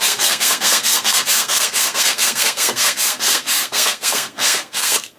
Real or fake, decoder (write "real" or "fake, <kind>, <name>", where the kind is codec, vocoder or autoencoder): fake, codec, SNAC